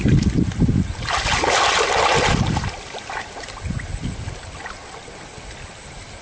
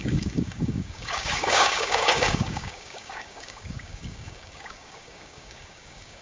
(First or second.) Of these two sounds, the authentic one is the first